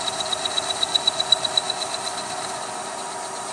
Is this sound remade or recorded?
recorded